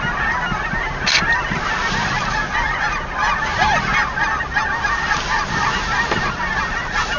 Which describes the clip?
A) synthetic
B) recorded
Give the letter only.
B